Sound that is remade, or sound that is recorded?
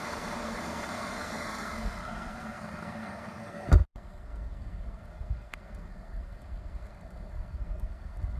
remade